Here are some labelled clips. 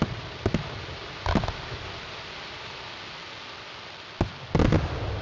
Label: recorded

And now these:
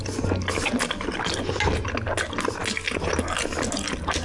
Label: recorded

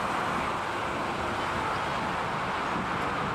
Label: recorded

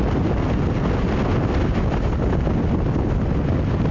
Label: recorded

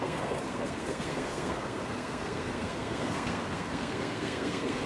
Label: remade